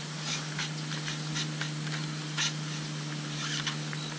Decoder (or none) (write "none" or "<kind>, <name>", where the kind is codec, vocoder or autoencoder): none